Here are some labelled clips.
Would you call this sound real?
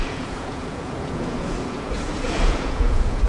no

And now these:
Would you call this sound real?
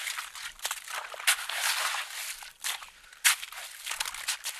yes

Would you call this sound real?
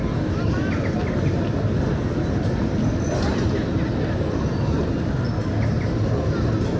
yes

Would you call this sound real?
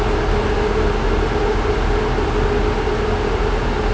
yes